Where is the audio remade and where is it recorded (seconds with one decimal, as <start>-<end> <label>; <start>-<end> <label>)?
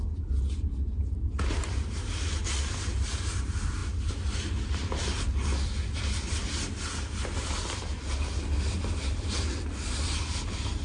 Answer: 0.0-10.8 recorded